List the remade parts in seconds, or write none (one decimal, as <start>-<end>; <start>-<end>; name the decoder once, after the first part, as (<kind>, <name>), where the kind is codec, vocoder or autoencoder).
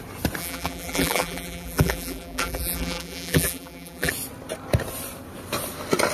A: 0.4-4.1 (vocoder, BigVGAN v2)